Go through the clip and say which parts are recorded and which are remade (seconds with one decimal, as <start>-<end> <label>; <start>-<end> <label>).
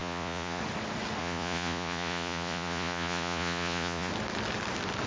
0.0-0.6 remade; 0.6-1.2 recorded; 1.2-4.1 remade; 4.1-5.1 recorded